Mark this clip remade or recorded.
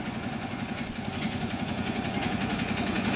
remade